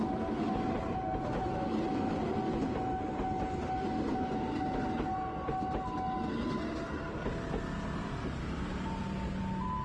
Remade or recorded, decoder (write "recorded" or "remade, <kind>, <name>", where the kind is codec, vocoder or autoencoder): recorded